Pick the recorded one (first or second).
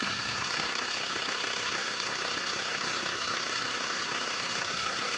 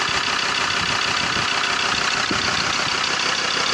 second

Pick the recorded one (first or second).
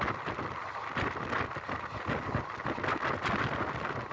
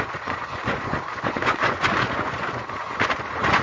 first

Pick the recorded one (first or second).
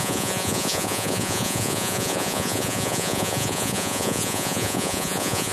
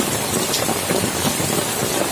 second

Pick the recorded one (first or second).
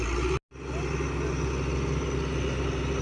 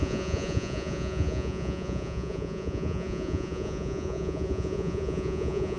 first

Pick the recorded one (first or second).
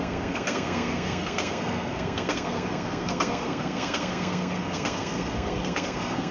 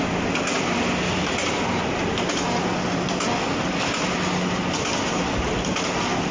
second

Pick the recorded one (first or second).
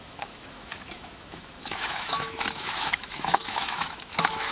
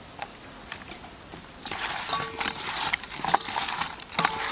second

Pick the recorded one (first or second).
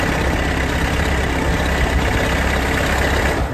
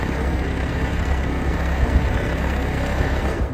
first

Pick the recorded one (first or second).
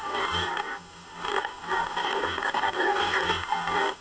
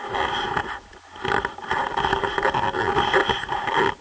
second